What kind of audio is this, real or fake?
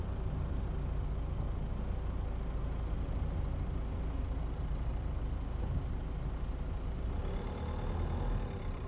real